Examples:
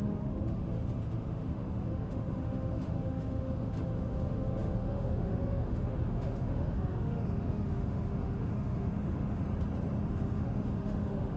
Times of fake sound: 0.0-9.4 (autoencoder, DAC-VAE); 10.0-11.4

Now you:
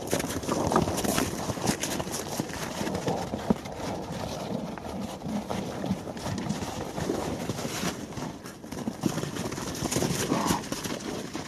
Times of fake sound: none

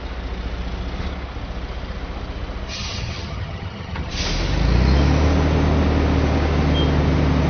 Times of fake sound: 2.7-4.1 (vocoder, HiFi-GAN)